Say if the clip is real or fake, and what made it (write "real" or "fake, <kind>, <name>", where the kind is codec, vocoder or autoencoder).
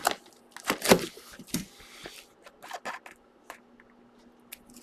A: real